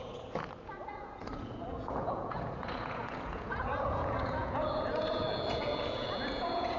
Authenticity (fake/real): fake